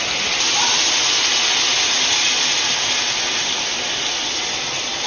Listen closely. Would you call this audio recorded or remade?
recorded